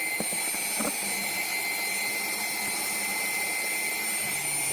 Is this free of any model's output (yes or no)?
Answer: yes